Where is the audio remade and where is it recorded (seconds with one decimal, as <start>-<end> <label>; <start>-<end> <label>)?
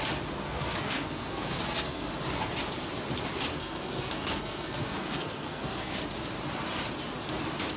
0.0-0.4 recorded; 0.4-2.1 remade; 2.1-3.5 recorded; 3.5-6.0 remade; 6.0-7.8 recorded